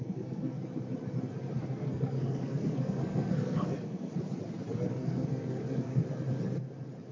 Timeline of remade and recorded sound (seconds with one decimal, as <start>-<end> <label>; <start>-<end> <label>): 0.0-0.6 remade; 0.6-1.6 recorded; 1.6-4.1 remade; 4.1-4.9 recorded; 4.9-6.0 remade; 6.0-7.1 recorded